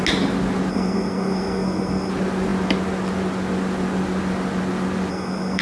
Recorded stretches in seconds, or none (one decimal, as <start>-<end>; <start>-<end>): 0.0-0.7; 2.1-5.1